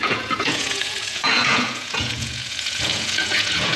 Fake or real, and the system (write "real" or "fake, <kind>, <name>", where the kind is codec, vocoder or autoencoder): fake, vocoder, Vocos